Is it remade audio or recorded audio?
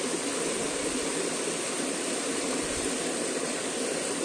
recorded